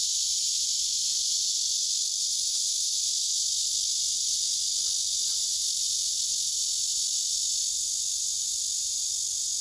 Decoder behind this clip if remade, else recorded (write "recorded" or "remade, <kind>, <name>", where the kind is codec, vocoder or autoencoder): recorded